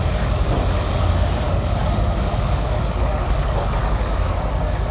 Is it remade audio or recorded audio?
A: remade